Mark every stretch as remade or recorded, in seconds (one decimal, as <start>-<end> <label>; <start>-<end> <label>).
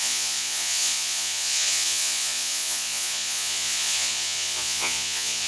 0.0-5.5 remade